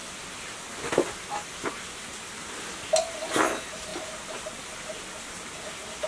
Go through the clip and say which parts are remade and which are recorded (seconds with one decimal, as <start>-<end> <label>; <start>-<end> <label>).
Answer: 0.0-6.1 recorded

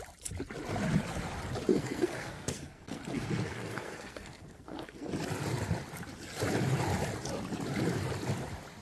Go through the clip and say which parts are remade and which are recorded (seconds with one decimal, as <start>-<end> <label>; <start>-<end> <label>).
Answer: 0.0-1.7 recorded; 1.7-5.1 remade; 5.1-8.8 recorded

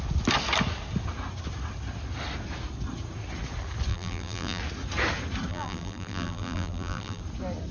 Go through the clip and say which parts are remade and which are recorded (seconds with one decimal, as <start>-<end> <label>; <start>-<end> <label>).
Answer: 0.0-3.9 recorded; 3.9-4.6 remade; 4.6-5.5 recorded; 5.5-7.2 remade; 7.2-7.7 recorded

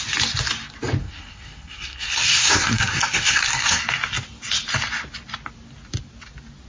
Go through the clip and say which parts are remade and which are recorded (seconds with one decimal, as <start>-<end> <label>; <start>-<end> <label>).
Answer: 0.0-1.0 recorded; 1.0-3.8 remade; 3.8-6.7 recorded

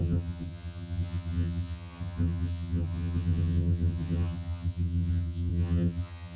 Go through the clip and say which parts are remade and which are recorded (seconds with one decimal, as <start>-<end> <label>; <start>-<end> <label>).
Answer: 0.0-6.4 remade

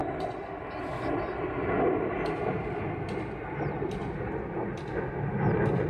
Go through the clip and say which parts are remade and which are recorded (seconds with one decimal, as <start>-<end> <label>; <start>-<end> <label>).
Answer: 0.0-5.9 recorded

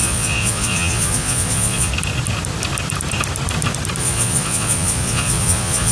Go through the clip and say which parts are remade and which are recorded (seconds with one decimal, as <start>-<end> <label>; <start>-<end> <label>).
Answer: 0.0-1.9 remade; 1.9-4.0 recorded; 4.0-5.9 remade